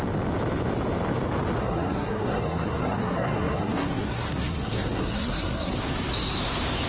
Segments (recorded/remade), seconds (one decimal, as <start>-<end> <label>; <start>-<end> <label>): 0.0-1.6 recorded; 1.6-5.7 remade; 5.7-6.9 recorded

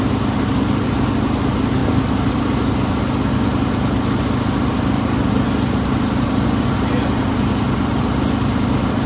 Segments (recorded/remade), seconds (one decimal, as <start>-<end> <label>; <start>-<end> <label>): 0.0-9.1 recorded

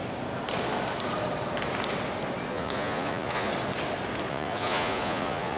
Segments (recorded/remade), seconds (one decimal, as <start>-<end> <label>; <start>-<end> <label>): 0.0-2.5 recorded; 2.5-3.5 remade; 3.5-4.3 recorded; 4.3-5.6 remade

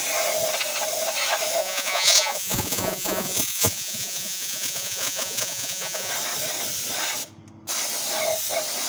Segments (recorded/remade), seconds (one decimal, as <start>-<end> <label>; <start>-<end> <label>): 0.0-1.6 recorded; 1.6-6.1 remade; 6.1-8.9 recorded

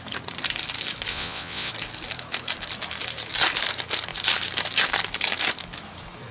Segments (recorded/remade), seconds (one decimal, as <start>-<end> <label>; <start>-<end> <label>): 0.0-1.1 recorded; 1.1-1.7 remade; 1.7-6.3 recorded